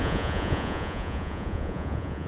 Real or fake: fake